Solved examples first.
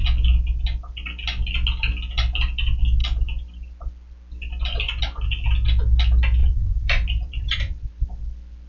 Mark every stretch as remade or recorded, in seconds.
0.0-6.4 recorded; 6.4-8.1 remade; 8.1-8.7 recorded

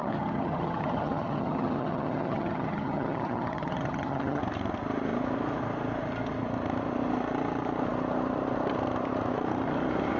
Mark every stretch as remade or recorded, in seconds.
0.0-4.4 remade; 4.4-10.2 recorded

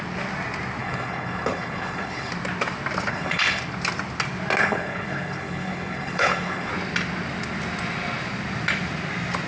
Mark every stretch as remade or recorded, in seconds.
0.0-0.8 recorded; 0.8-2.3 remade; 2.3-3.1 recorded; 3.1-3.6 remade; 3.6-4.6 recorded; 4.6-6.7 remade; 6.7-9.5 recorded

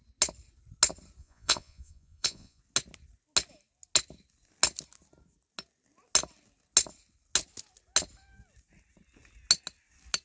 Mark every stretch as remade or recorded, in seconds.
0.0-1.2 recorded; 1.2-2.6 remade; 2.6-10.2 recorded

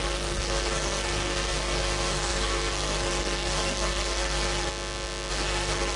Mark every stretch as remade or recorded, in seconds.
0.0-4.7 remade; 4.7-5.3 recorded; 5.3-6.0 remade

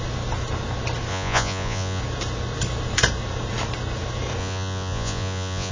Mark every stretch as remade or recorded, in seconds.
0.0-1.1 recorded; 1.1-2.0 remade; 2.0-4.4 recorded; 4.4-5.7 remade

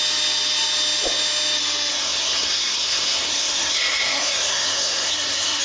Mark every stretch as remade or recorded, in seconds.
0.0-1.9 recorded; 1.9-5.6 remade

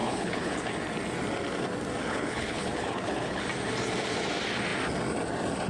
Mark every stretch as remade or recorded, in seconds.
0.0-0.7 remade; 0.7-2.0 recorded; 2.0-3.4 remade; 3.4-5.7 recorded